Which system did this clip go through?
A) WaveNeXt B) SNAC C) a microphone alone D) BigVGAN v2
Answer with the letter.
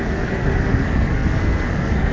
B